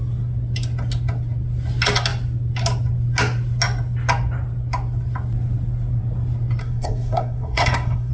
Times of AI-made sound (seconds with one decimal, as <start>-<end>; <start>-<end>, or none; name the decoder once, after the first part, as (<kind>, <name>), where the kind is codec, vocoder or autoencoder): 6.6-8.1 (codec, SNAC)